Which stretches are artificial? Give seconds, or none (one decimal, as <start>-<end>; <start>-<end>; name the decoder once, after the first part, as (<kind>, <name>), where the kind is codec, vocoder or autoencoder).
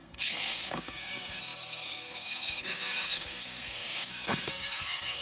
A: 0.0-5.2 (codec, SNAC)